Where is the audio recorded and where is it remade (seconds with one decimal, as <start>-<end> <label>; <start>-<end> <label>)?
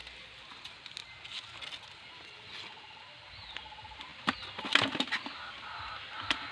0.0-6.5 recorded